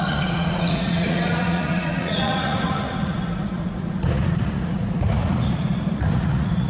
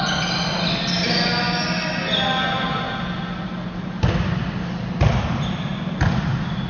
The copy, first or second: first